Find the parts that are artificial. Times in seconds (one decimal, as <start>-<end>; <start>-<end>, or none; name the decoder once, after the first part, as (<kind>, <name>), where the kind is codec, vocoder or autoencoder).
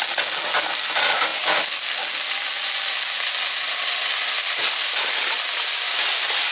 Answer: none